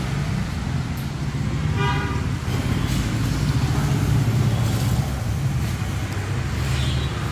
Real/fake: real